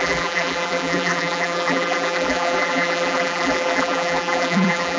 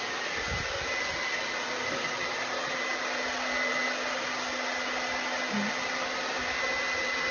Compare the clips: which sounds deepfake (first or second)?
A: first